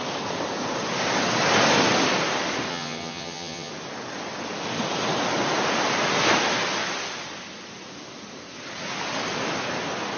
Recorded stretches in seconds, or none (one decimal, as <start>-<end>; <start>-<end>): 0.0-2.7; 3.7-10.2